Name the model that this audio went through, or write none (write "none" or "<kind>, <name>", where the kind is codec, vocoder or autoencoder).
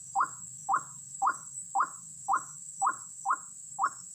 autoencoder, DAC-VAE